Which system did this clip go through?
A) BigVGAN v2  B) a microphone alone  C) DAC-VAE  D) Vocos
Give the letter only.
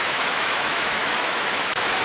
C